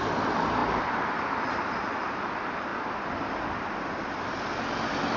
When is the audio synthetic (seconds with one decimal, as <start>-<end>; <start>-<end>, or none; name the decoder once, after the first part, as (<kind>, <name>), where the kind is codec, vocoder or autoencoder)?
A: none